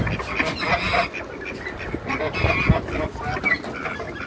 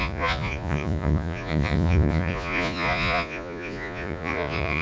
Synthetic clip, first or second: second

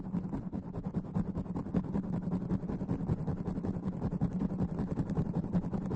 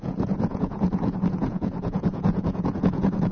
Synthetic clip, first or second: second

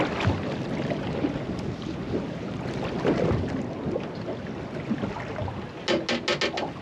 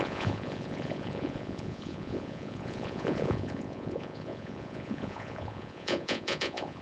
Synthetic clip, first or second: second